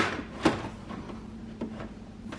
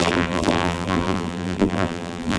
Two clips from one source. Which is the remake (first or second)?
second